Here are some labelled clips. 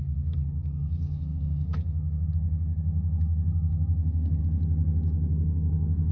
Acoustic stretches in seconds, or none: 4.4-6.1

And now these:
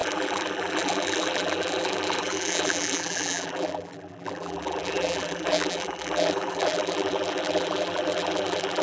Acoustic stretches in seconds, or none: none

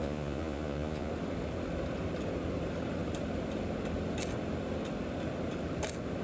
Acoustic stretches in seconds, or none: 1.1-6.2

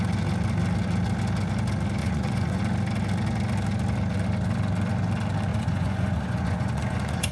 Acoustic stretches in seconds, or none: 0.0-2.0; 2.6-5.5

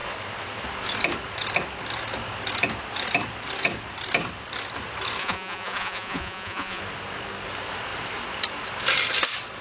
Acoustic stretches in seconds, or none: 0.0-5.2; 6.8-9.6

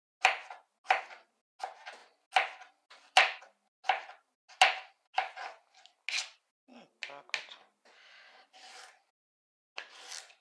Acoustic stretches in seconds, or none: 0.0-10.4